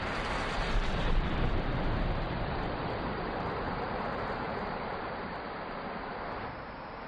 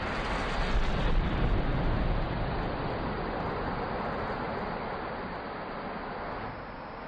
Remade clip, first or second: first